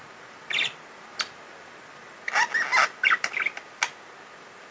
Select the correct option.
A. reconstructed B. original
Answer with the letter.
B